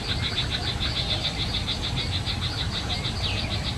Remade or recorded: recorded